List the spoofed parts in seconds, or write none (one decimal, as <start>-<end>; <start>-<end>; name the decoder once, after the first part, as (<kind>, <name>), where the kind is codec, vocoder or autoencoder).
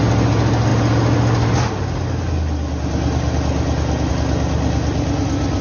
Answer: none